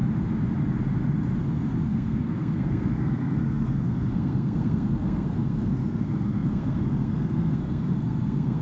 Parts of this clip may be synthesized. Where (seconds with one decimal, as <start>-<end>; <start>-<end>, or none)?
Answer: 1.4-8.6